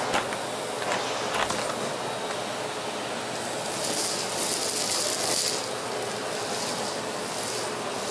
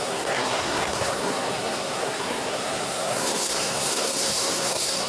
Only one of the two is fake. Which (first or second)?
second